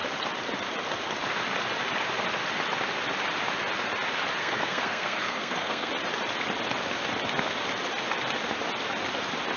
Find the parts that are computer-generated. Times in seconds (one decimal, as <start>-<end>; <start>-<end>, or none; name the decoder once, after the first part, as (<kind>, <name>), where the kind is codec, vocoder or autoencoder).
4.4-5.9 (codec, SNAC)